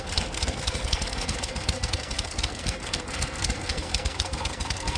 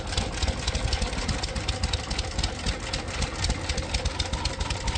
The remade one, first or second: first